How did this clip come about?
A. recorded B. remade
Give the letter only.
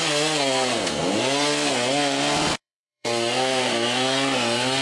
B